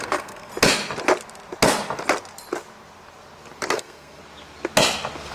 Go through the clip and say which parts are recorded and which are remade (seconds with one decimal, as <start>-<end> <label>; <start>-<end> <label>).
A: 0.0-0.5 remade; 0.5-3.7 recorded; 3.7-4.2 remade; 4.2-5.3 recorded